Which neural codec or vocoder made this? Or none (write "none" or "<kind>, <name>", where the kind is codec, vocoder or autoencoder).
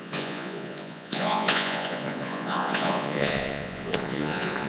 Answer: vocoder, Vocos